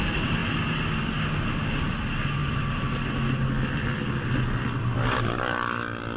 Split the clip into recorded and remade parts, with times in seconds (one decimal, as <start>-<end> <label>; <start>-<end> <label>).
0.0-2.4 recorded; 2.4-6.2 remade